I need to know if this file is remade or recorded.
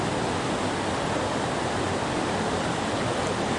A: remade